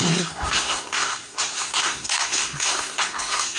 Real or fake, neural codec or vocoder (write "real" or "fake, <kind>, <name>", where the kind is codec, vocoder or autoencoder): fake, codec, SNAC